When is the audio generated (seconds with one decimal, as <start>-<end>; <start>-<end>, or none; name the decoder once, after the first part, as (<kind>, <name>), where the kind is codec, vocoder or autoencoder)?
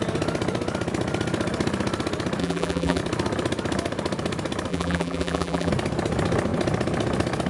2.4-3.0 (vocoder, BigVGAN v2); 4.7-5.7